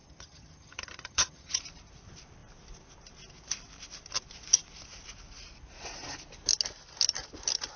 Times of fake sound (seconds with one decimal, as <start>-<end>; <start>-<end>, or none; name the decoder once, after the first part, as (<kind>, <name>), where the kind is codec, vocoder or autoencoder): 0.0-1.6 (vocoder, HiFi-GAN)